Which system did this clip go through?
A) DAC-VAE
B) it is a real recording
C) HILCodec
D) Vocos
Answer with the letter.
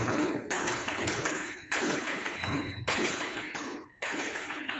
C